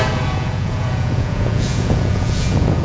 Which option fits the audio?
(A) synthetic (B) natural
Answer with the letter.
A